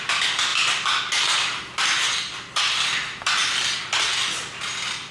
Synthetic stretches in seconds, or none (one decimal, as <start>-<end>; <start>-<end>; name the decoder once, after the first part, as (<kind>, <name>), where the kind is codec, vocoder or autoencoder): none